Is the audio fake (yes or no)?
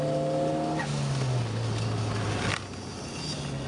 no